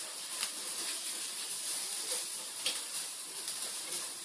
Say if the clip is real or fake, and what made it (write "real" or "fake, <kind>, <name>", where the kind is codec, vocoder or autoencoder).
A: fake, vocoder, BigVGAN v2